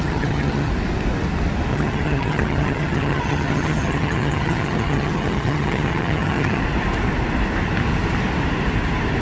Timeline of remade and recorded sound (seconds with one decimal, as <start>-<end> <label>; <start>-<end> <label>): 0.0-0.7 remade; 0.7-1.7 recorded; 1.7-6.6 remade; 6.6-9.2 recorded